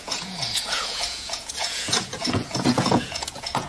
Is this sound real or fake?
fake